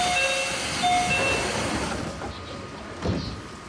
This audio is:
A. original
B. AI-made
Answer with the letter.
A